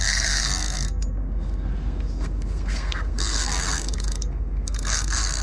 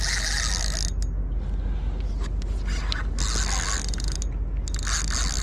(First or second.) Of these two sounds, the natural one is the second